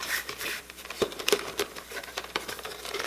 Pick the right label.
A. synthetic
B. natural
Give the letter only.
A